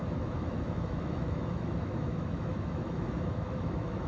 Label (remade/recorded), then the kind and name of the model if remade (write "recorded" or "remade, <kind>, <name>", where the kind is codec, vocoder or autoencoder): remade, autoencoder, DAC-VAE